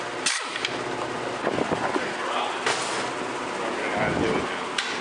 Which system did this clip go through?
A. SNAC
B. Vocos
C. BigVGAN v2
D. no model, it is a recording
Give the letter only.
D